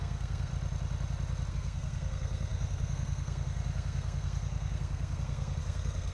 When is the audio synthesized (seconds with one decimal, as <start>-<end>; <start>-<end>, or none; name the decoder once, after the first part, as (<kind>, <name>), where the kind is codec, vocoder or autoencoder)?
0.0-0.5 (codec, SNAC); 1.5-6.1

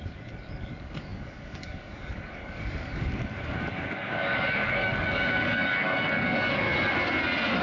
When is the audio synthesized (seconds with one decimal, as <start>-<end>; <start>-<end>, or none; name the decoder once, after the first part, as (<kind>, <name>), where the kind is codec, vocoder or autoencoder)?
0.0-6.7 (codec, DAC)

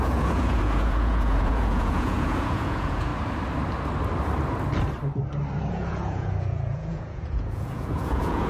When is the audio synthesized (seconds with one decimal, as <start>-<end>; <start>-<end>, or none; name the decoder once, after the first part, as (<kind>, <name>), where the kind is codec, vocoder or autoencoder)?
0.0-3.1 (vocoder, Vocos); 5.7-8.5

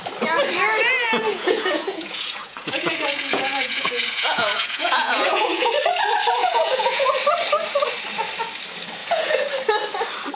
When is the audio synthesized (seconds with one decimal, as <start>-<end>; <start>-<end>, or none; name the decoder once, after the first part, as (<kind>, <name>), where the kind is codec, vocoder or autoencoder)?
1.3-5.7 (vocoder, Vocos); 6.4-7.1; 9.0-9.5